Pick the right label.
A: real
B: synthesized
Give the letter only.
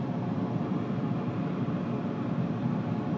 B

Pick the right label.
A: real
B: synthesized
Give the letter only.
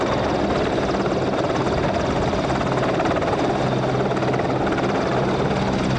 A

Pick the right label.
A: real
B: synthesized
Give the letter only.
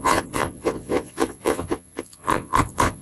B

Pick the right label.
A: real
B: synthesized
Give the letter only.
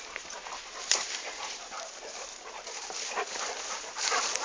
B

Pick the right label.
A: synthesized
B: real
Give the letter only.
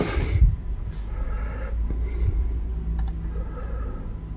B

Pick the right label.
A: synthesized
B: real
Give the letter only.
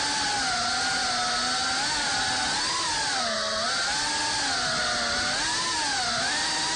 B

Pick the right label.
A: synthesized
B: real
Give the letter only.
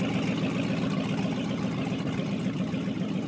B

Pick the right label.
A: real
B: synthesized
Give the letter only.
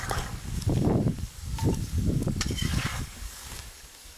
B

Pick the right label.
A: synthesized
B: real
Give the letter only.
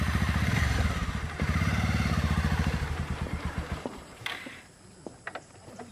A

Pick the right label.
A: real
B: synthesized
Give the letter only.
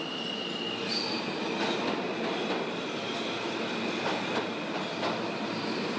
A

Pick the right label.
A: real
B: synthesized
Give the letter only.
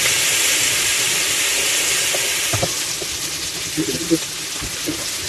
A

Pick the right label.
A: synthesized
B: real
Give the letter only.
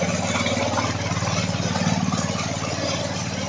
B